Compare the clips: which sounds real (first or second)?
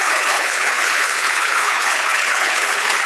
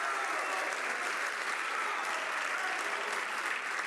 second